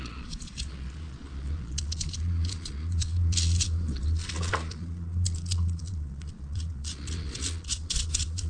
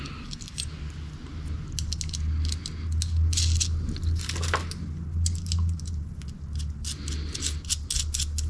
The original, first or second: second